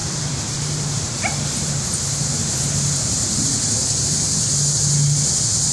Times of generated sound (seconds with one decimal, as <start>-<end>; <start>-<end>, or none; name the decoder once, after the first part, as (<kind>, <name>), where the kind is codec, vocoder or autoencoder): 0.0-3.4 (vocoder, BigVGAN v2)